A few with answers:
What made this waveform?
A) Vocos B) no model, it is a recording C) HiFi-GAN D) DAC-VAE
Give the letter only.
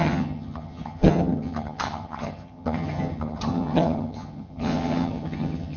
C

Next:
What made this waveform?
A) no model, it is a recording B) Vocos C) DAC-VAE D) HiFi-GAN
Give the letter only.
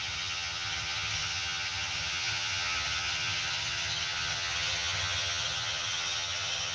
D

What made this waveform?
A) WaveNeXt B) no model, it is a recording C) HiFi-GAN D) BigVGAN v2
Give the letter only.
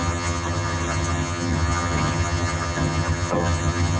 C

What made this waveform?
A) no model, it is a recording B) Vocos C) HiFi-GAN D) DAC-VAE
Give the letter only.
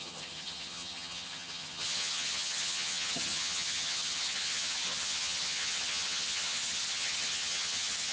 C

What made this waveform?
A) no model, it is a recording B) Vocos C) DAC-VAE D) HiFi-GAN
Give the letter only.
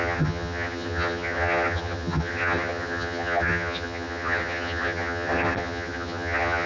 D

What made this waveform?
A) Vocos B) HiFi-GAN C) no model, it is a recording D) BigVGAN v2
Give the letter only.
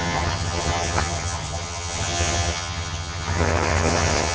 B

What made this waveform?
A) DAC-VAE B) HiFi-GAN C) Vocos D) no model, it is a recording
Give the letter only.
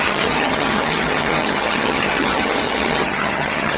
B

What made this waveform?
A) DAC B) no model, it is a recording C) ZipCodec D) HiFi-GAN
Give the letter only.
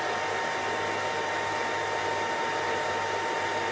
B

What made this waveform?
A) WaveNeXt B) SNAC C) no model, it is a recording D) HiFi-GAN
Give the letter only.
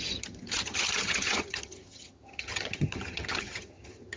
D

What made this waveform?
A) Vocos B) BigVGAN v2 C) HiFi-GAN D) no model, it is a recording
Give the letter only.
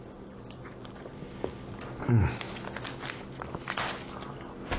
D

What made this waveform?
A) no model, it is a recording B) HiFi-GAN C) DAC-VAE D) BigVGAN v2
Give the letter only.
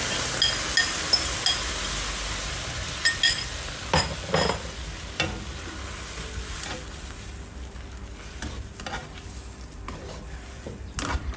A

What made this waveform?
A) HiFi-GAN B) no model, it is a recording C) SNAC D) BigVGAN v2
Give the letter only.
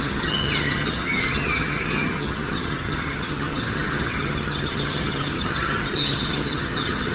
A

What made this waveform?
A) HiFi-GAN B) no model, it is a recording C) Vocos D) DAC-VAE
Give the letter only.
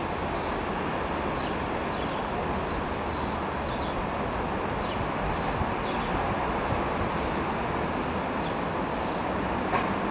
B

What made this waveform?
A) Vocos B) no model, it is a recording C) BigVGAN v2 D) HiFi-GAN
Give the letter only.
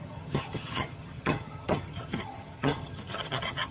D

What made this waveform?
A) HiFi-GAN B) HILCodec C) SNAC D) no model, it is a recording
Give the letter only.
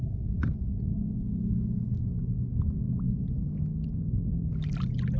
D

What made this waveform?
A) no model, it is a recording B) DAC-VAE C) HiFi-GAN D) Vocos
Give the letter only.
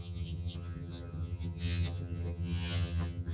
C